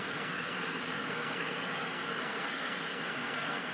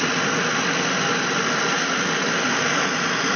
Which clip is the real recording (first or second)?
second